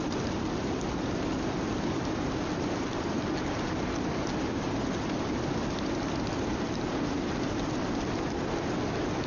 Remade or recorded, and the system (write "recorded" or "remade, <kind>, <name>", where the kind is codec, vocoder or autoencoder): recorded